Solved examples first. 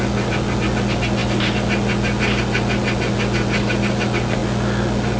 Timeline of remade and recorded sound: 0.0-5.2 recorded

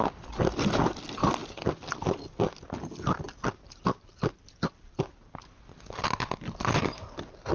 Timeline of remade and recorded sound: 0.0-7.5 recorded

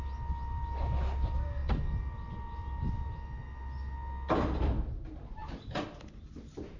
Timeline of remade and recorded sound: 0.0-6.8 recorded

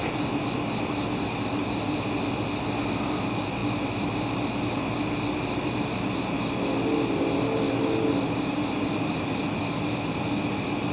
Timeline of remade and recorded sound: 0.0-10.9 recorded